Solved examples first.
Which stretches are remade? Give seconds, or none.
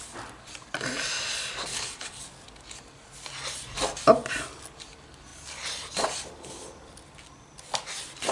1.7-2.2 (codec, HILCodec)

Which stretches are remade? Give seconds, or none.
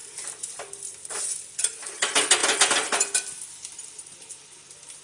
none